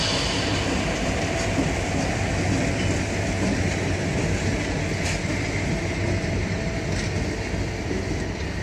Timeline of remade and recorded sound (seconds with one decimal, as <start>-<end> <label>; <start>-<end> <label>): 0.0-8.6 recorded